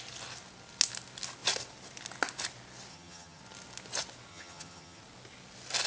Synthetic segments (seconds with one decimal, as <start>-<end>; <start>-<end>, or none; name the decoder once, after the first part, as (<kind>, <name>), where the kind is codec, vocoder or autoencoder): 2.9-3.4 (vocoder, HiFi-GAN); 4.3-5.0